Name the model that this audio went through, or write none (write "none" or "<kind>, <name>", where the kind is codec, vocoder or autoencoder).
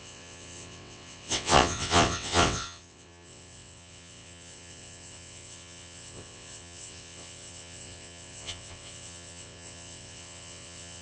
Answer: vocoder, WaveNeXt